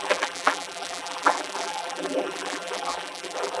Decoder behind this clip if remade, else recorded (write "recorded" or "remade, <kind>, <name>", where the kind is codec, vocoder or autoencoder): remade, vocoder, BigVGAN v2